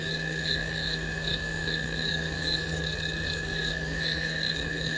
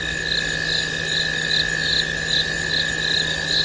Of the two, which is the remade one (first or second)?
first